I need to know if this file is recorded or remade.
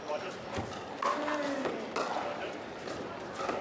recorded